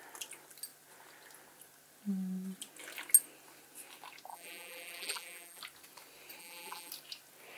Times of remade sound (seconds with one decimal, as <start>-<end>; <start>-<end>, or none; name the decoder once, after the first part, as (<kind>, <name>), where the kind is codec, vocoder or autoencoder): 4.3-5.6 (vocoder, BigVGAN v2); 6.4-6.9